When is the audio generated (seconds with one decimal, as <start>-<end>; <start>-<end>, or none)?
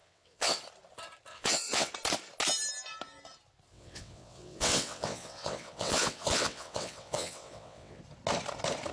0.0-0.6; 1.3-1.9; 3.7-8.0